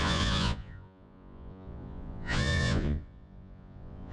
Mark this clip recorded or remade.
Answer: remade